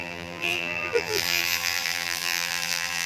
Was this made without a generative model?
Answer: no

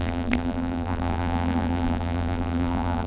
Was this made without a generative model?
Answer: no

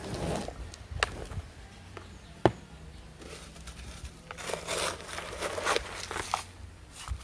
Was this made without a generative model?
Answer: yes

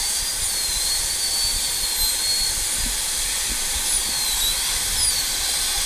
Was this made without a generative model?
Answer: no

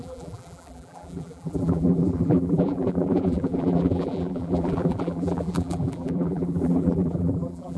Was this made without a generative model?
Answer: no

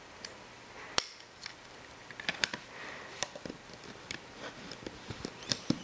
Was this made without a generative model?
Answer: no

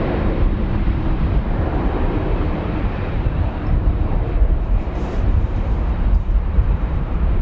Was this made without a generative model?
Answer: no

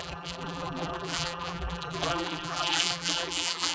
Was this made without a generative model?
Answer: no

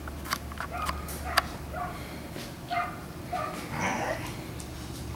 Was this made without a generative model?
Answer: yes